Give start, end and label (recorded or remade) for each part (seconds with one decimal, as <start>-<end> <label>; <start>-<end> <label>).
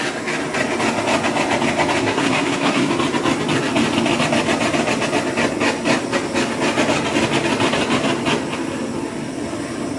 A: 0.0-2.0 recorded; 2.0-2.9 remade; 2.9-10.0 recorded